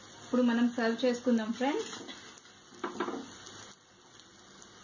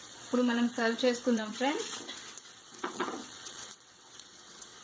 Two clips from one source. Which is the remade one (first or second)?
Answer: second